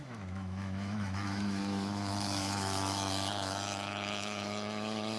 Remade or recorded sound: remade